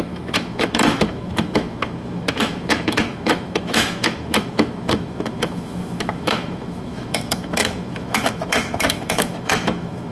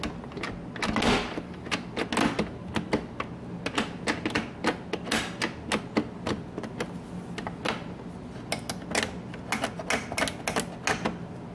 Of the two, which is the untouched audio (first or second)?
second